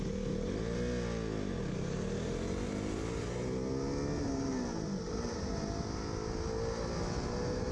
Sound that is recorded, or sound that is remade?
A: recorded